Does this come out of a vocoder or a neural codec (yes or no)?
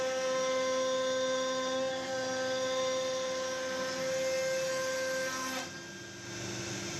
no